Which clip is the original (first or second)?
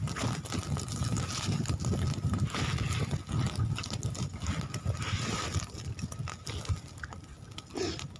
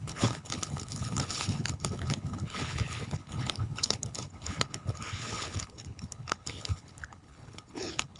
first